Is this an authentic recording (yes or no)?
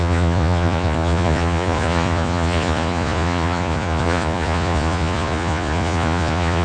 no